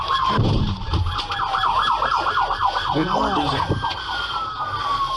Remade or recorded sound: recorded